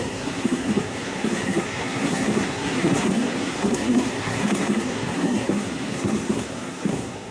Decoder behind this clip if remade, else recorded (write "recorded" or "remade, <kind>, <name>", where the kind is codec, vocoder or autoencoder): remade, codec, SNAC